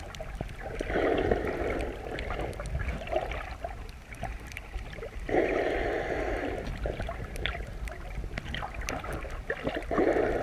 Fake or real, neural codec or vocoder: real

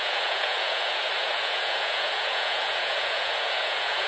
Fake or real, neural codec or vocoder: fake, vocoder, Vocos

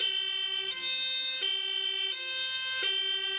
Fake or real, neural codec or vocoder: real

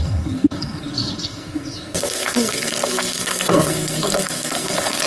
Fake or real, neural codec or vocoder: fake, codec, SNAC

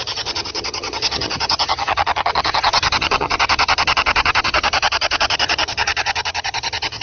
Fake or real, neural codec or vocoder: fake, vocoder, HiFi-GAN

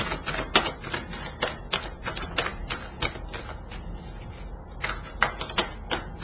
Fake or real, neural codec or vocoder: real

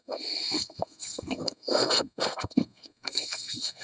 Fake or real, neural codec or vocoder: fake, codec, SNAC